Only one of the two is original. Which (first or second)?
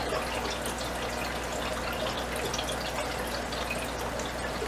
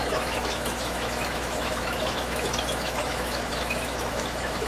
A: first